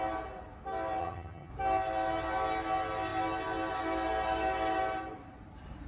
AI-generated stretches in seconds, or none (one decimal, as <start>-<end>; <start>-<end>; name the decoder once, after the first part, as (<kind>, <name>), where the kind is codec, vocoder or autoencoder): 1.0-1.5 (vocoder, HiFi-GAN)